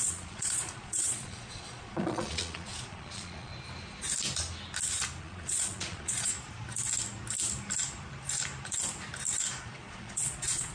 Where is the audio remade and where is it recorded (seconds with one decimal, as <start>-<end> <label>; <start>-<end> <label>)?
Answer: 0.0-3.5 remade; 3.5-5.2 recorded; 5.2-6.3 remade; 6.3-9.6 recorded; 9.6-10.7 remade